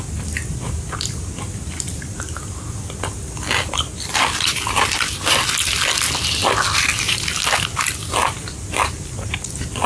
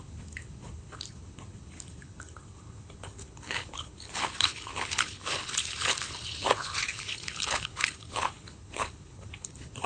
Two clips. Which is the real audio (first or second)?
first